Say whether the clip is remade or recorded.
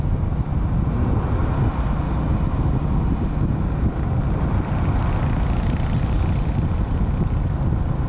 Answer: recorded